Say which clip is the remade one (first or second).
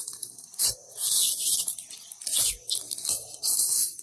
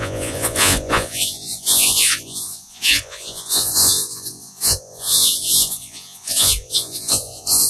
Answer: second